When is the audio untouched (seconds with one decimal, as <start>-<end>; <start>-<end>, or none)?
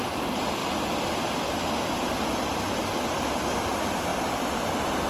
0.0-5.1